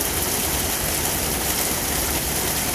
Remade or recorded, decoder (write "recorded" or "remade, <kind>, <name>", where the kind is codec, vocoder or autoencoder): recorded